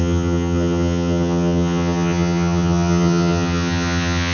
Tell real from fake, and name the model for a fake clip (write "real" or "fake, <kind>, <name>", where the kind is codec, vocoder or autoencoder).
fake, vocoder, HiFi-GAN